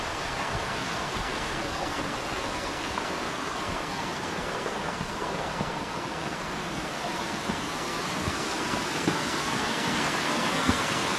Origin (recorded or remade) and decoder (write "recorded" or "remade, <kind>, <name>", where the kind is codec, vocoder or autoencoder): remade, codec, SNAC